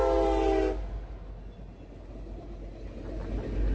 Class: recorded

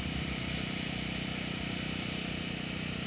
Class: remade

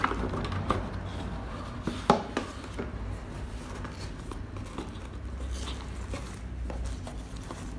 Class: recorded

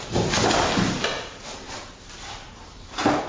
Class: recorded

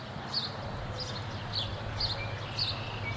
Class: recorded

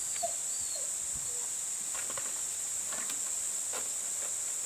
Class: recorded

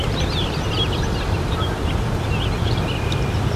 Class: recorded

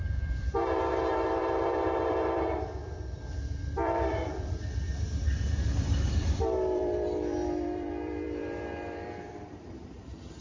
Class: remade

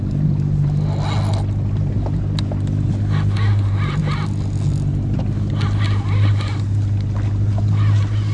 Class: recorded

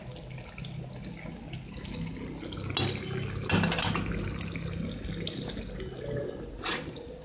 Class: recorded